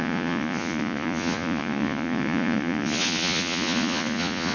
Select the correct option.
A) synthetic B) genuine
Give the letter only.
A